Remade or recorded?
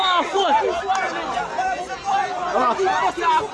recorded